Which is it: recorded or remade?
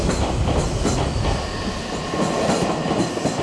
recorded